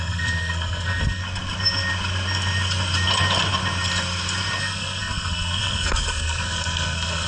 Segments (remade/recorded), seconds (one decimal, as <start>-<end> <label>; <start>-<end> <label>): 0.0-1.2 remade; 1.2-4.6 recorded; 4.6-7.3 remade